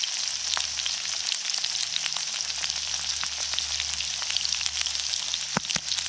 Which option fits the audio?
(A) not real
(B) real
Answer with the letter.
B